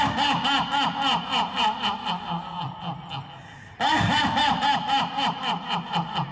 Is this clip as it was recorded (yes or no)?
yes